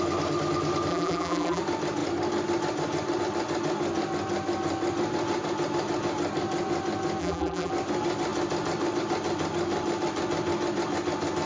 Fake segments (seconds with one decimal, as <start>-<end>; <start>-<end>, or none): 0.9-1.6; 7.2-7.7